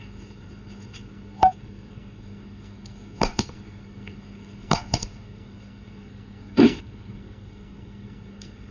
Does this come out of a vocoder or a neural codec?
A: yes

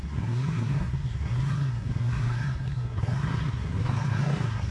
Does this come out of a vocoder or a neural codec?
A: yes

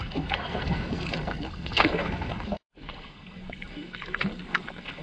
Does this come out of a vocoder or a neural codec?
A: yes